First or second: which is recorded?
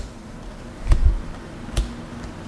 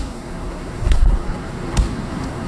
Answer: first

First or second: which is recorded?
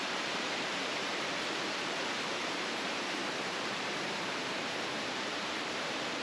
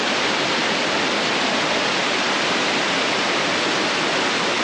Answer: second